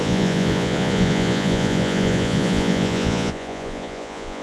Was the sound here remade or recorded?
remade